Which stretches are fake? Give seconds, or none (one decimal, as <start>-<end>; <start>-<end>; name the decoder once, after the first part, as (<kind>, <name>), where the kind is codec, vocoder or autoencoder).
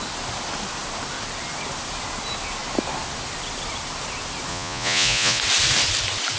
4.5-5.4 (vocoder, Vocos)